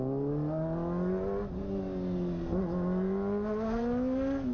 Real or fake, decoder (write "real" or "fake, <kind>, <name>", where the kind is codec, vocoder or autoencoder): real